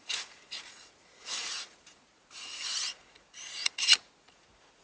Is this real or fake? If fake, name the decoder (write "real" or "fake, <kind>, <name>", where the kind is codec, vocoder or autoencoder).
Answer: fake, vocoder, Vocos